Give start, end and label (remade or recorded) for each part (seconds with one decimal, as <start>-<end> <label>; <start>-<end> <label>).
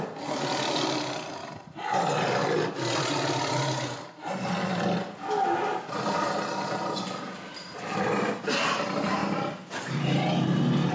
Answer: 0.0-10.9 recorded